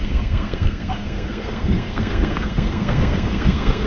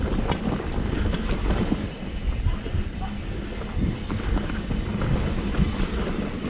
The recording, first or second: second